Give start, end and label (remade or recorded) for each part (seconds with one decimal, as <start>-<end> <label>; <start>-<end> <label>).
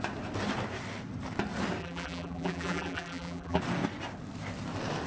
0.0-1.8 recorded; 1.8-3.6 remade; 3.6-5.1 recorded